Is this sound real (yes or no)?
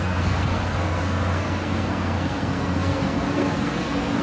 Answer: no